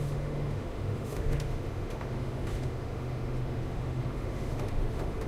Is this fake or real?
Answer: fake